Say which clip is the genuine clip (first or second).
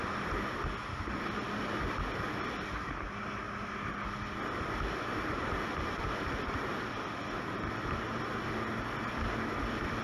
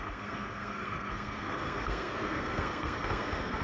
first